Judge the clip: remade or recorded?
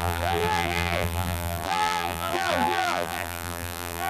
remade